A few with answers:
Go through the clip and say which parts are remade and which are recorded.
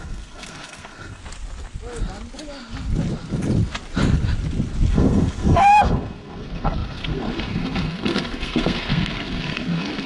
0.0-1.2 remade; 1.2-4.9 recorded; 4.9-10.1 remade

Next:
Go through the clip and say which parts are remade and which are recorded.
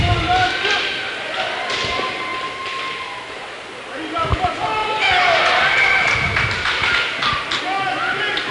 0.0-8.5 recorded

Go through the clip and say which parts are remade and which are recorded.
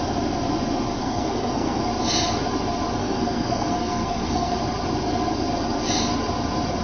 0.0-1.0 recorded; 1.0-1.8 remade; 1.8-3.0 recorded; 3.0-4.6 remade; 4.6-6.8 recorded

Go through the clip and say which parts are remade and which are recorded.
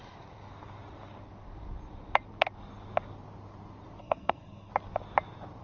0.0-4.0 recorded; 4.0-4.7 remade; 4.7-5.6 recorded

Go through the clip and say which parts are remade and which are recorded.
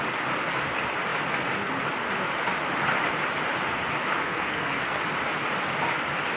0.0-4.2 recorded; 4.2-5.0 remade; 5.0-6.4 recorded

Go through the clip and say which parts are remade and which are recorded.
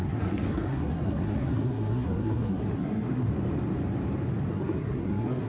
0.0-3.3 remade; 3.3-4.5 recorded; 4.5-5.5 remade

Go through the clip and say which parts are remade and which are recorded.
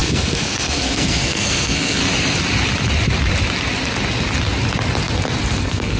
0.0-2.0 remade; 2.0-5.6 recorded; 5.6-6.0 remade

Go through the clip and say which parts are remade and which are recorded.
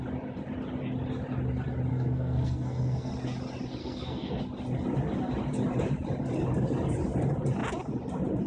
0.0-1.9 recorded; 1.9-3.1 remade; 3.1-3.8 recorded; 3.8-4.4 remade; 4.4-8.5 recorded